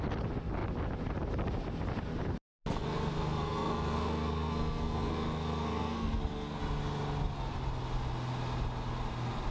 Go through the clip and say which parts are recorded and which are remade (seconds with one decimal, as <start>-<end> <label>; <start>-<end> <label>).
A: 0.0-2.7 recorded; 2.7-6.6 remade; 6.6-9.5 recorded